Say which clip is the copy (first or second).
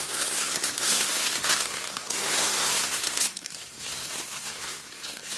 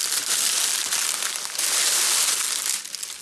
first